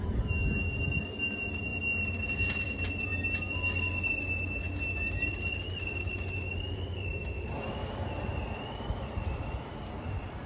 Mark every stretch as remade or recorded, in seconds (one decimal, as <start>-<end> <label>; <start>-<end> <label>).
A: 0.0-3.1 remade; 3.1-5.1 recorded; 5.1-7.1 remade; 7.1-10.0 recorded; 10.0-10.5 remade